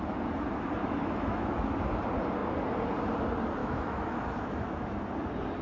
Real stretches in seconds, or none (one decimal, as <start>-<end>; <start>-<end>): 0.0-0.8; 1.6-3.6; 5.0-5.6